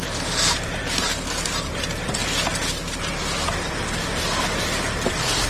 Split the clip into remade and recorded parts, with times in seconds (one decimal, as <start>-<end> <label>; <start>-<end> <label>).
0.0-2.2 remade; 2.2-5.1 recorded; 5.1-5.5 remade